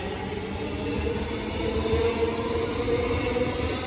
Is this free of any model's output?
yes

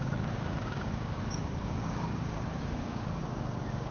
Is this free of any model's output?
no